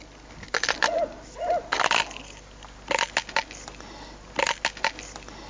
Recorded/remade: recorded